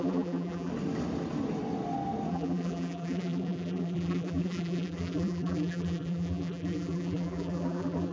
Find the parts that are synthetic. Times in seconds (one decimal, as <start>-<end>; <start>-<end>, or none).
0.0-0.7; 2.3-8.1

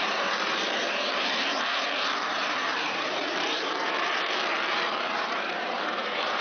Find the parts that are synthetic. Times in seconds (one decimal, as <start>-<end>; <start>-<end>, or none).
0.0-6.4

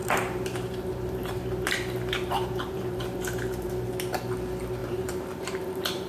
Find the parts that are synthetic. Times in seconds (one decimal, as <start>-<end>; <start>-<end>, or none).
0.0-3.7; 4.8-6.1

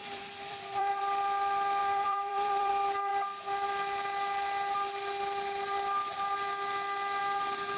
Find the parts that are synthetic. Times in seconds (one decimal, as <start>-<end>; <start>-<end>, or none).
0.0-1.0; 1.8-2.7